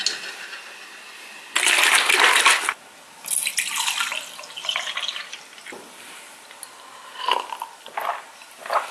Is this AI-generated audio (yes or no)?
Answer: no